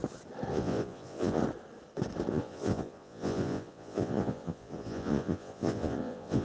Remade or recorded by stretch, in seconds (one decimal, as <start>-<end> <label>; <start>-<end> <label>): 0.0-0.5 recorded; 0.5-1.4 remade; 1.4-2.3 recorded; 2.3-6.4 remade